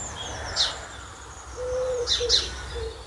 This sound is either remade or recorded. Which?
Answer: recorded